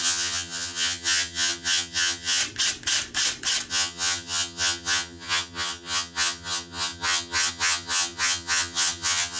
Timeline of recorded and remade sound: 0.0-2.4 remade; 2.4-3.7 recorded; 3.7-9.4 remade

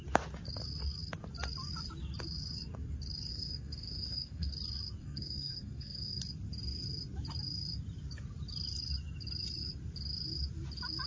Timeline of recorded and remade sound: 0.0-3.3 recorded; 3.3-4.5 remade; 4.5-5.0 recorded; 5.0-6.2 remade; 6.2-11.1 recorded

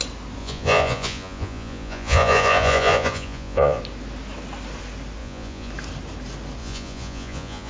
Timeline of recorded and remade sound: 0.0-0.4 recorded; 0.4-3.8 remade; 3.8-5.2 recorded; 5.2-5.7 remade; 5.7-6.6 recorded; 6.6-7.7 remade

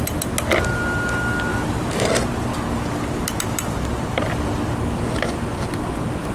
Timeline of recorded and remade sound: 0.0-1.5 recorded; 1.5-2.1 remade; 2.1-6.3 recorded